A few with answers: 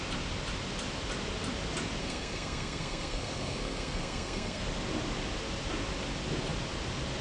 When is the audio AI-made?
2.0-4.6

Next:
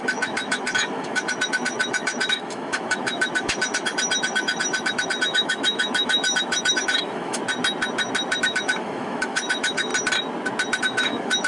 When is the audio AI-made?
0.0-7.4; 8.4-9.9; 10.8-11.5

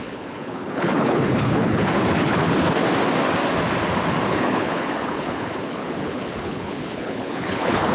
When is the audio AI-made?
0.0-2.8; 4.3-7.9

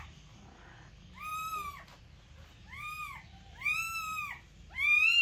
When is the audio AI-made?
none